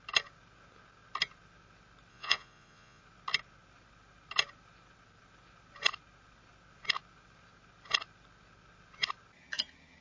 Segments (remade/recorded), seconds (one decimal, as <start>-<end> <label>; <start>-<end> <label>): 0.0-2.1 recorded; 2.1-3.0 remade; 3.0-10.0 recorded